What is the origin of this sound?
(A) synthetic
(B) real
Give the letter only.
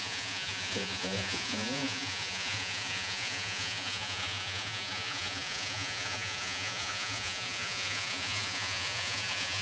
A